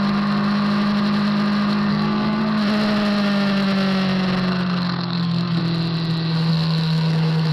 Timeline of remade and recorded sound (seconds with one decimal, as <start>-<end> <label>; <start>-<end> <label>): 0.0-1.9 recorded; 1.9-2.4 remade; 2.4-4.5 recorded; 4.5-5.6 remade; 5.6-6.5 recorded; 6.5-7.5 remade